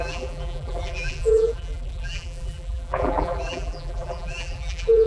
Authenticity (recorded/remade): remade